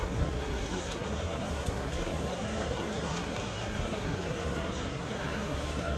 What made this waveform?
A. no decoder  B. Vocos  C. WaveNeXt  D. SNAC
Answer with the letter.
D